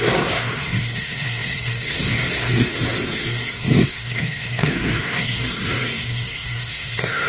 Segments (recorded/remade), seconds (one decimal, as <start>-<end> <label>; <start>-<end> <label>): 0.0-7.3 remade